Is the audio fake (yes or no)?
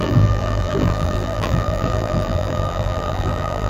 yes